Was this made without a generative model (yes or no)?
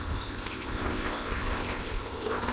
no